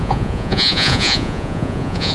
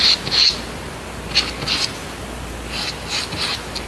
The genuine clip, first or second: second